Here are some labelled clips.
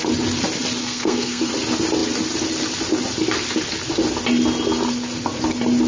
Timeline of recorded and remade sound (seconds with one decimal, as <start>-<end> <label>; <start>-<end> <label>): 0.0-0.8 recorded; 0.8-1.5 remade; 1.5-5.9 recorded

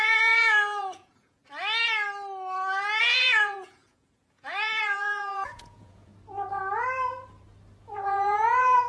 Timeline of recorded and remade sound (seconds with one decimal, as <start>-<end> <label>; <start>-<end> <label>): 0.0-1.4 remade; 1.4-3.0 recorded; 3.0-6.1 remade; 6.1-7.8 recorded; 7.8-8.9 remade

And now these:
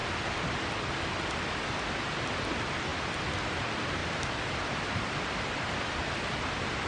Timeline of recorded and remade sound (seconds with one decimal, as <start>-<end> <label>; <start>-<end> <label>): 0.0-6.9 recorded

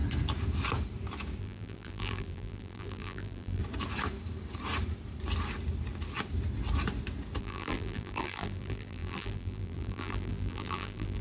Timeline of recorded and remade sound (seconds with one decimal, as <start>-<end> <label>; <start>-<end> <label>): 0.0-1.4 recorded; 1.4-3.6 remade; 3.6-7.4 recorded; 7.4-11.2 remade